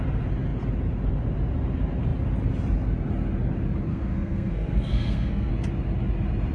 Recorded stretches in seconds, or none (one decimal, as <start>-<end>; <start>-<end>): 0.0-3.9; 5.5-6.5